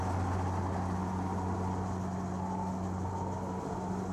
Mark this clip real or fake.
real